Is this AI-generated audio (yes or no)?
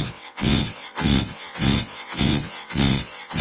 yes